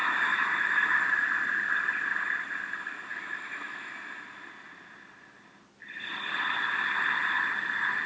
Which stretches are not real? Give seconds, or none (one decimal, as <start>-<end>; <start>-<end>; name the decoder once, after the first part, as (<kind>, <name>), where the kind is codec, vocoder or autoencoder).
0.0-1.0 (autoencoder, DAC-VAE); 3.1-3.9